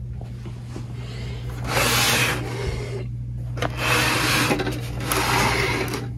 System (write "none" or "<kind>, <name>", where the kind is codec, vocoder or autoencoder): none